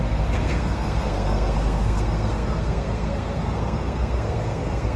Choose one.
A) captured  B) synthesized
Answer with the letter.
B